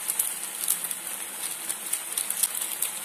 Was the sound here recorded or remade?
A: recorded